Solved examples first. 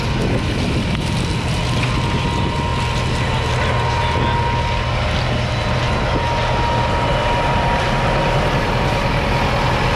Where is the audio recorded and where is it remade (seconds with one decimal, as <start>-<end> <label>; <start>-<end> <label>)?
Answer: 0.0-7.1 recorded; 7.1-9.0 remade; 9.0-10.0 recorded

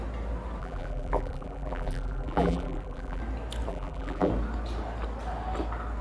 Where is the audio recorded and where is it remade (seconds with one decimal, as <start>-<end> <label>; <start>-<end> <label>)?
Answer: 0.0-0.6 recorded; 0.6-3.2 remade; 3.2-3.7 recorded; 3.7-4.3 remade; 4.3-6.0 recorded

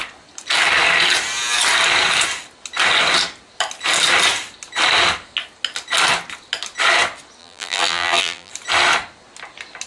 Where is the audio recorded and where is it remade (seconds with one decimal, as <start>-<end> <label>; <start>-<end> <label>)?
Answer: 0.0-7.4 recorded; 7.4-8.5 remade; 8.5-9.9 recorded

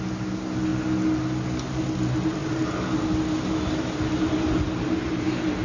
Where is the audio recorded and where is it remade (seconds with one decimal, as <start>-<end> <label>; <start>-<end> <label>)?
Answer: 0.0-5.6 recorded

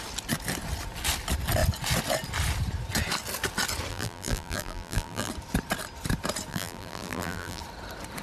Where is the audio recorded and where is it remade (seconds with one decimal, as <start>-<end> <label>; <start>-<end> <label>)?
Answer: 0.0-3.9 recorded; 3.9-5.3 remade; 5.3-6.5 recorded; 6.5-7.6 remade; 7.6-8.2 recorded